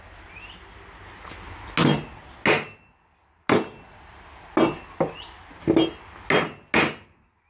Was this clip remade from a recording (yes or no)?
no